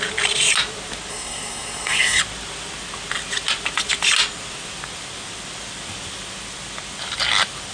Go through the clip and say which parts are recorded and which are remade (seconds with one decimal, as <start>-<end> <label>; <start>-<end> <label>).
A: 0.0-1.1 recorded; 1.1-2.2 remade; 2.2-7.7 recorded